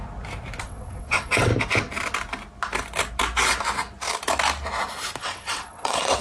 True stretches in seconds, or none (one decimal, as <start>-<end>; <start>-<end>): 0.0-0.6; 1.5-5.2